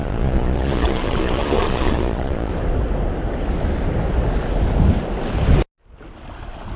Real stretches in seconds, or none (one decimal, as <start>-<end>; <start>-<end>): 2.5-6.8